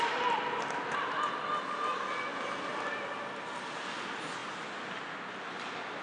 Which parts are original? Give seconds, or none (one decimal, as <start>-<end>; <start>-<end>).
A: 0.0-6.0